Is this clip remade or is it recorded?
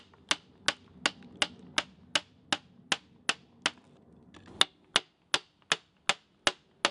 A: recorded